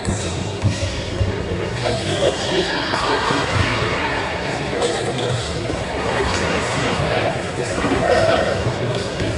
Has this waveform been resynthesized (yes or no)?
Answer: yes